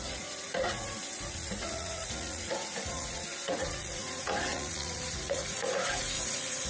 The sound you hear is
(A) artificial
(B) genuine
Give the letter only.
A